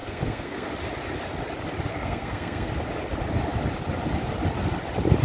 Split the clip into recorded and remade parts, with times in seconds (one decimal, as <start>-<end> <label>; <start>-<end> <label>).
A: 0.0-0.7 remade; 0.7-1.9 recorded; 1.9-2.7 remade; 2.7-5.2 recorded